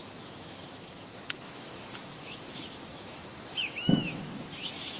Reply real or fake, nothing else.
fake